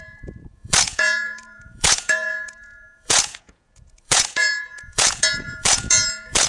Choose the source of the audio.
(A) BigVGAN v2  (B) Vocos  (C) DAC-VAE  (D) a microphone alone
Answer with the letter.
B